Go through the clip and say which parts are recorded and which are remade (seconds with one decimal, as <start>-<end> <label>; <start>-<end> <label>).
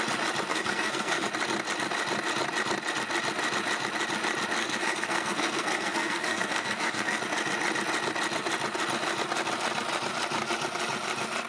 0.0-0.5 recorded; 0.5-1.3 remade; 1.3-4.6 recorded; 4.6-7.2 remade; 7.2-11.5 recorded